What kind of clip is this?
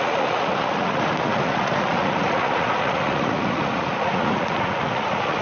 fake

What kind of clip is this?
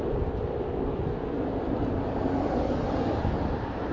real